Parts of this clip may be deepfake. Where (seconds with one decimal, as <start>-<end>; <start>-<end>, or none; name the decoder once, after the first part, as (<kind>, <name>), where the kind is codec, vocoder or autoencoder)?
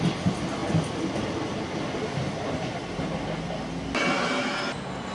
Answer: none